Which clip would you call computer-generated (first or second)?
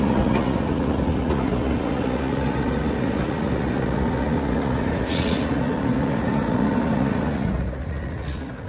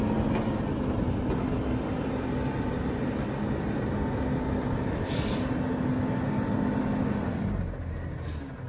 first